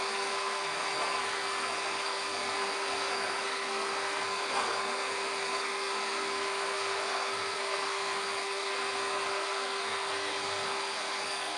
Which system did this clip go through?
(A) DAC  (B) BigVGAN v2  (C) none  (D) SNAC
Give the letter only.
D